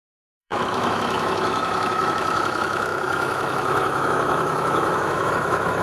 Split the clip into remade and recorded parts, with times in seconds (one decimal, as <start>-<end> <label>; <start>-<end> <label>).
0.0-5.8 remade